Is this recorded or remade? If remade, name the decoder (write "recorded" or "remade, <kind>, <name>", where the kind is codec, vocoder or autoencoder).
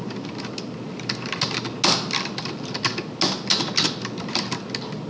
recorded